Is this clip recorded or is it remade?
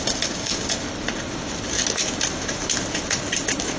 recorded